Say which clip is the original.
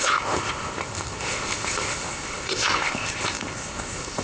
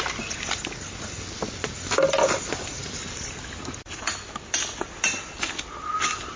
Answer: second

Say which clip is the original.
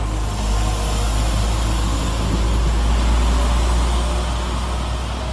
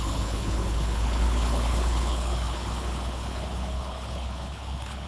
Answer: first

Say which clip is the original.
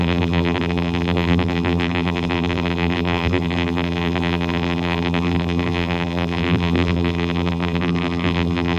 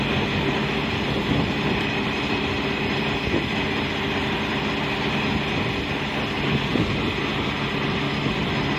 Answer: second